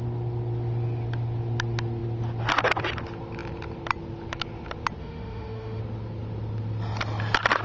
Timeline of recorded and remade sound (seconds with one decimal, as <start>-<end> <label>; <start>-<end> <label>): 0.0-5.0 recorded; 5.0-5.8 remade; 5.8-7.6 recorded